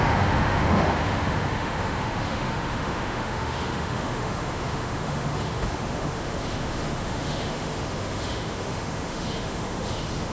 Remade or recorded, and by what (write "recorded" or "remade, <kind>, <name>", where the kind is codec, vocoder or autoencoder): remade, autoencoder, DAC-VAE